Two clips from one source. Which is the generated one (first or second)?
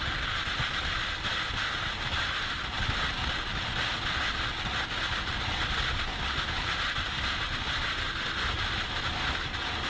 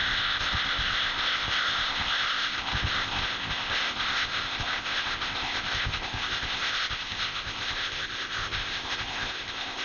second